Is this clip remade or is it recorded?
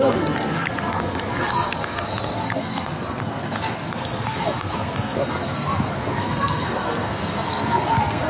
remade